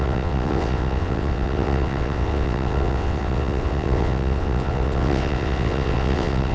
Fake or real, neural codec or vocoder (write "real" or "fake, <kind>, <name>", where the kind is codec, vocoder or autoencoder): fake, vocoder, WaveNeXt